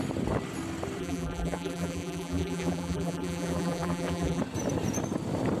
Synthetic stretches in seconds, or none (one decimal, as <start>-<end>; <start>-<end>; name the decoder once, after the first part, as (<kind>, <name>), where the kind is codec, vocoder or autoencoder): 1.0-4.4 (vocoder, BigVGAN v2)